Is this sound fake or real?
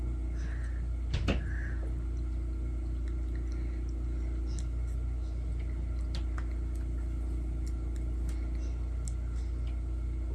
real